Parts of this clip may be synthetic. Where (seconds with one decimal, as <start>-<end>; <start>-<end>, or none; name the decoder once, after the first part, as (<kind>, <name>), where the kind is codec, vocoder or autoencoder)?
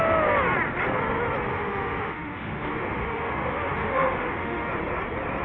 1.5-4.7 (autoencoder, DAC-VAE)